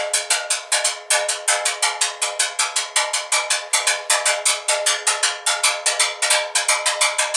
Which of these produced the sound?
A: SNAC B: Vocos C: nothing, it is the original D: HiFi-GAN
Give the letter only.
C